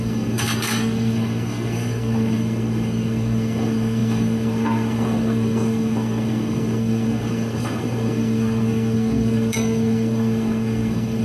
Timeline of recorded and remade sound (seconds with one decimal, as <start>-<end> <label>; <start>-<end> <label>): 0.0-11.2 remade